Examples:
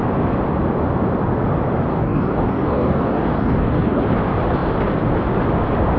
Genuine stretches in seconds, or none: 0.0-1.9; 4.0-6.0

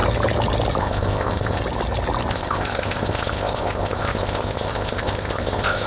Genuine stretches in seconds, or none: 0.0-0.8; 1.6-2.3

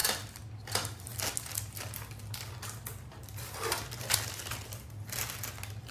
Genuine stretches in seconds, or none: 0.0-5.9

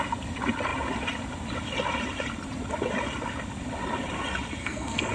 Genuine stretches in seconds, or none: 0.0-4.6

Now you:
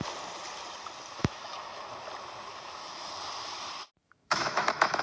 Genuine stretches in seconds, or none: 0.0-1.2; 1.9-2.5; 3.1-4.0

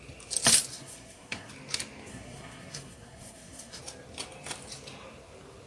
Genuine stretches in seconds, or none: 0.0-0.7; 1.5-2.1; 3.8-5.7

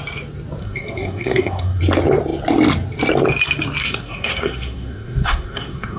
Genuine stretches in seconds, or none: 0.0-0.6; 1.8-3.8